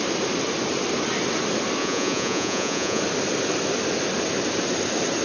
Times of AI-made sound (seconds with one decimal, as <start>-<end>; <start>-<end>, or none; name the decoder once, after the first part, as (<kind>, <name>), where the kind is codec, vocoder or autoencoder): 1.8-3.0 (vocoder, Vocos)